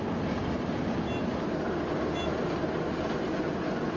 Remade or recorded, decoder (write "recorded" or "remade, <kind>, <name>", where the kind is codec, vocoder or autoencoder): recorded